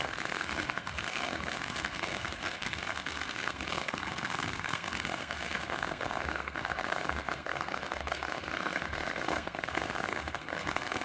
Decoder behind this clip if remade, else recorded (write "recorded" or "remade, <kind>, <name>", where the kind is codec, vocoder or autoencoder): remade, codec, SNAC